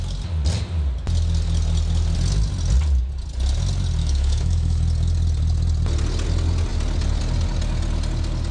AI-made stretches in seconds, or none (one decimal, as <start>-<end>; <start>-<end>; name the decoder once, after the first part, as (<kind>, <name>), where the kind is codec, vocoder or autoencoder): 4.0-4.8 (autoencoder, DAC-VAE)